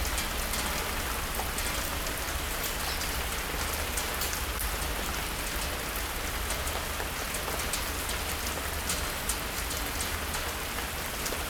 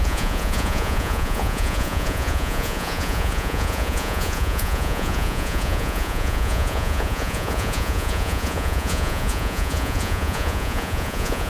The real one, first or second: first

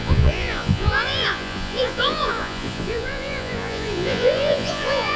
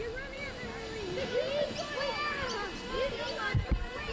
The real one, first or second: second